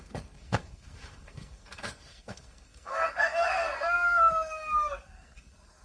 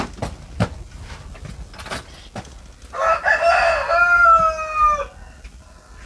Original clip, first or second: second